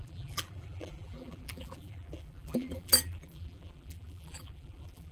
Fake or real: fake